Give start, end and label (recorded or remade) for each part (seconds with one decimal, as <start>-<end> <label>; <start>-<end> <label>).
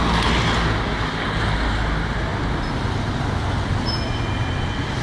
0.0-5.0 recorded